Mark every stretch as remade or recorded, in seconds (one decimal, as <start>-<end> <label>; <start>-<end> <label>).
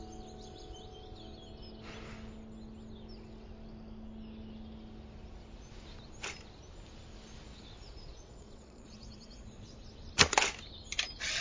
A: 0.0-7.5 recorded; 7.5-10.1 remade; 10.1-11.4 recorded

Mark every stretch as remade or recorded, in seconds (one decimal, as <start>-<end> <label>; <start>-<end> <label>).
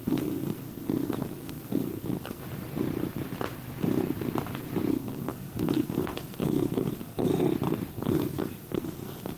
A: 0.0-2.4 remade; 2.4-4.9 recorded; 4.9-7.3 remade; 7.3-7.9 recorded; 7.9-9.4 remade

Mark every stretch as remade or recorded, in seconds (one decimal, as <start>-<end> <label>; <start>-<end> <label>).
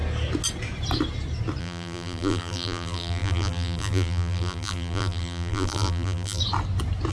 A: 0.0-1.6 recorded; 1.6-6.4 remade; 6.4-7.1 recorded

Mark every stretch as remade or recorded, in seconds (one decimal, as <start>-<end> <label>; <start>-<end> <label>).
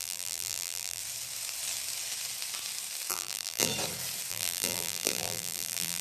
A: 0.0-1.0 remade; 1.0-3.1 recorded; 3.1-3.7 remade; 3.7-4.3 recorded; 4.3-6.0 remade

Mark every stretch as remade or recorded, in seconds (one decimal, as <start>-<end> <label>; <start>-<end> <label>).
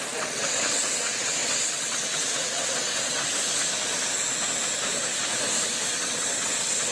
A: 0.0-3.3 remade; 3.3-5.9 recorded; 5.9-6.9 remade